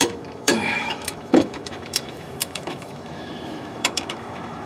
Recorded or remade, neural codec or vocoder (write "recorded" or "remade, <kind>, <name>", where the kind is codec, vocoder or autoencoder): remade, autoencoder, DAC-VAE